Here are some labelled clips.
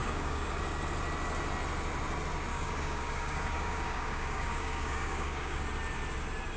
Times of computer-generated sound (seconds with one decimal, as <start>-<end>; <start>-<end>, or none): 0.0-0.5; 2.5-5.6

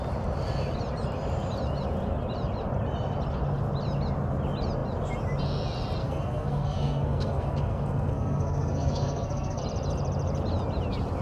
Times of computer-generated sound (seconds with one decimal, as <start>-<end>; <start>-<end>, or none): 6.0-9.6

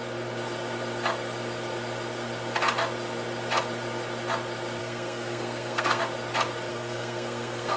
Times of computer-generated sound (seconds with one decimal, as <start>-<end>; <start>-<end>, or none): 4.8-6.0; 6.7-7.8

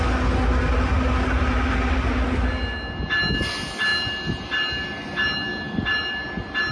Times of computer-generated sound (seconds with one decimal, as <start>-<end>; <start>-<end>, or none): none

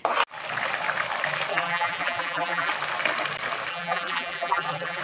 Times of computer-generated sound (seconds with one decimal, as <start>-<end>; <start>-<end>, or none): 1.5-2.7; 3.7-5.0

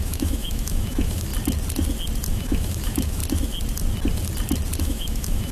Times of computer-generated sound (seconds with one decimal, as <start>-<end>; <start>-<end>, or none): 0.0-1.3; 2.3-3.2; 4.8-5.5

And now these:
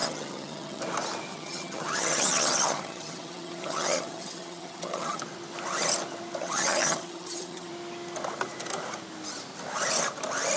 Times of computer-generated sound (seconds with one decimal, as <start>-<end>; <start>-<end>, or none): 0.0-0.8; 1.3-5.2; 6.4-7.7